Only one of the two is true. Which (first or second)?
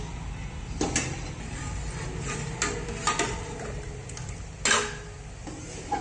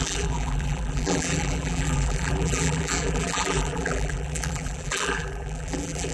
first